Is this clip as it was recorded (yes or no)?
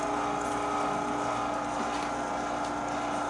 yes